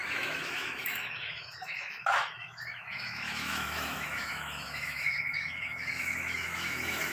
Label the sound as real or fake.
fake